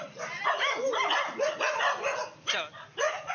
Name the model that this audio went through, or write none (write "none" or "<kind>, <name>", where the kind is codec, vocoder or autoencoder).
none